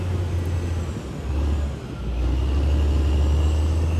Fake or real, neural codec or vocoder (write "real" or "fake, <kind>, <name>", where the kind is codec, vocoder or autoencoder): real